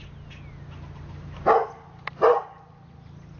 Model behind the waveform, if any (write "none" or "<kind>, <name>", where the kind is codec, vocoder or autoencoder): none